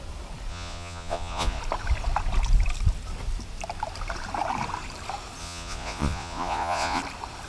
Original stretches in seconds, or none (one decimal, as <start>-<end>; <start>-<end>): 0.0-0.5; 1.6-5.4; 7.0-7.5